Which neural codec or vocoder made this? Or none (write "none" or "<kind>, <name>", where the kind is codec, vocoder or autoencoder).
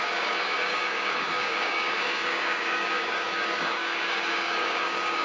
codec, DAC